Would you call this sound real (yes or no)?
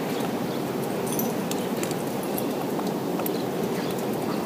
yes